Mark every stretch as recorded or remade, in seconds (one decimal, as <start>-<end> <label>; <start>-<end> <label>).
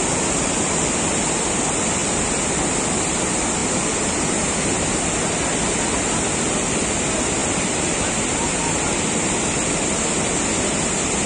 0.0-11.3 recorded